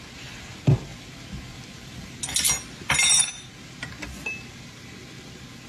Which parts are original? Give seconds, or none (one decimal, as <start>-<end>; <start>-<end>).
0.0-5.7